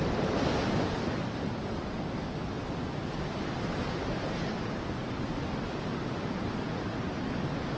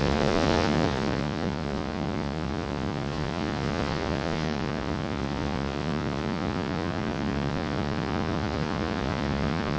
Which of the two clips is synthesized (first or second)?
second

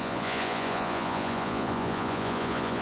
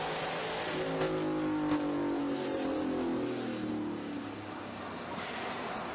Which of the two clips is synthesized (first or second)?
first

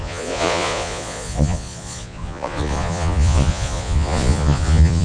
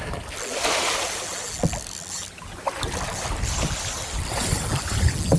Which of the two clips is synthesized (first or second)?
first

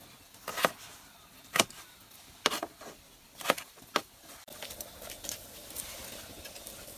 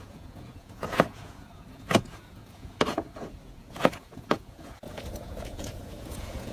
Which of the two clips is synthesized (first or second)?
second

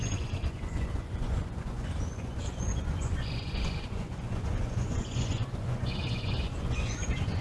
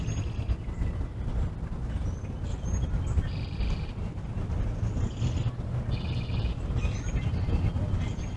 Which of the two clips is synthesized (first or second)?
first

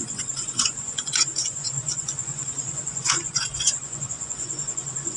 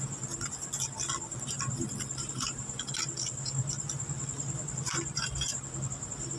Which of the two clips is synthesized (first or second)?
first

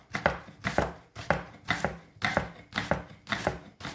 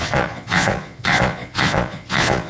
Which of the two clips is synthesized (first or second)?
second